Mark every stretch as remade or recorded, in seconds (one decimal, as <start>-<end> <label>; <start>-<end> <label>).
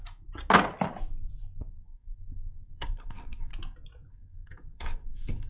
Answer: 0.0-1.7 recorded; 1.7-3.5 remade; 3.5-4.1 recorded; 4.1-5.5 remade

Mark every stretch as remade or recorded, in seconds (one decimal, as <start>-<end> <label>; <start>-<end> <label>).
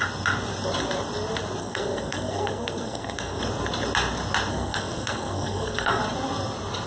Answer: 0.0-1.6 recorded; 1.6-3.4 remade; 3.4-4.5 recorded; 4.5-6.0 remade; 6.0-6.9 recorded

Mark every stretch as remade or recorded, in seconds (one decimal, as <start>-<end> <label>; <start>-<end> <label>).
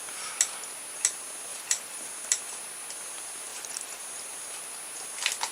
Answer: 0.0-1.5 recorded; 1.5-2.1 remade; 2.1-3.5 recorded; 3.5-4.0 remade; 4.0-5.5 recorded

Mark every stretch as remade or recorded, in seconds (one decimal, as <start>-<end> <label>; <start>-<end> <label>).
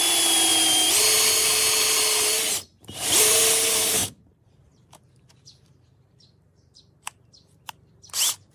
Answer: 0.0-2.7 recorded; 2.7-3.4 remade; 3.4-4.0 recorded; 4.0-7.0 remade; 7.0-8.5 recorded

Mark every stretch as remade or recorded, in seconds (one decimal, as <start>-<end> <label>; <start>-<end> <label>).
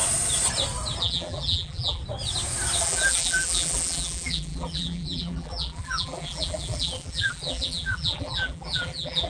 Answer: 0.0-1.0 recorded; 1.0-2.0 remade; 2.0-2.8 recorded; 2.8-9.3 remade